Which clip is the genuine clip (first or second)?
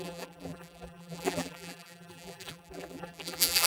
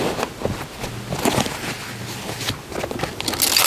second